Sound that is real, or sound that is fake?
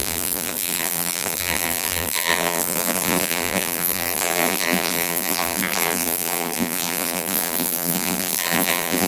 fake